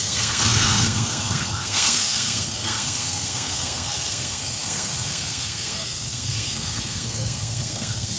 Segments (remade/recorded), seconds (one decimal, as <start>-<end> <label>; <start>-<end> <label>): 0.0-8.2 remade